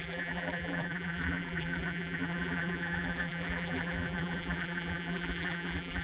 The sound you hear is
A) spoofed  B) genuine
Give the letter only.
A